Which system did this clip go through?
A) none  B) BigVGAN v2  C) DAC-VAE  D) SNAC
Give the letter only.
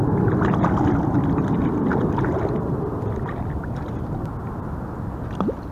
A